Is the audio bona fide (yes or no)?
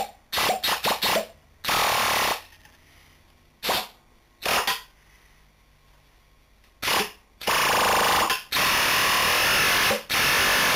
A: yes